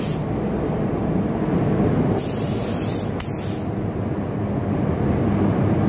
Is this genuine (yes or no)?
yes